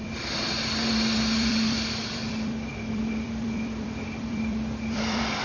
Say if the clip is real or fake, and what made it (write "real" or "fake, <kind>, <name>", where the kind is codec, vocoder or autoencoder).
fake, vocoder, BigVGAN v2